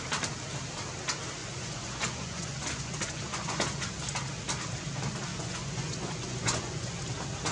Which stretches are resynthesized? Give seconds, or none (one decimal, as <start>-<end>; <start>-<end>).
1.4-3.9; 5.3-7.0